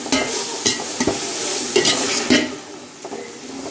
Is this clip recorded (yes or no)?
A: yes